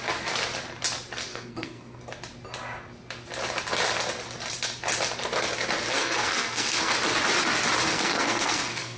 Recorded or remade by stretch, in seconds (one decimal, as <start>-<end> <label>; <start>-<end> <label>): 0.0-1.3 recorded; 1.3-2.0 remade; 2.0-5.9 recorded; 5.9-6.9 remade; 6.9-7.9 recorded; 7.9-9.0 remade